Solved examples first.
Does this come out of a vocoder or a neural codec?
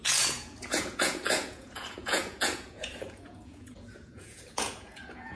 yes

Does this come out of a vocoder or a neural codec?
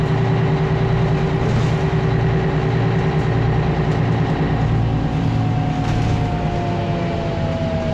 no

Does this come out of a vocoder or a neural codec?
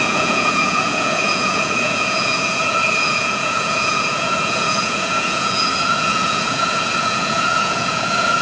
yes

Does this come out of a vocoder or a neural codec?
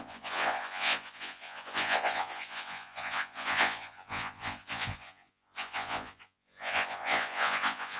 yes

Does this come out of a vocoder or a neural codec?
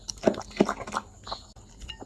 no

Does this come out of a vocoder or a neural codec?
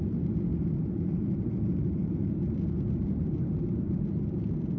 no